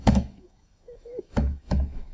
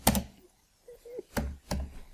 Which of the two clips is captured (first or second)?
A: second